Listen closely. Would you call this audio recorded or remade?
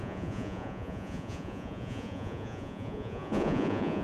remade